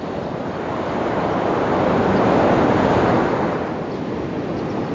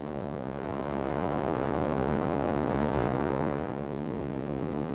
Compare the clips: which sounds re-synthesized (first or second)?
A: second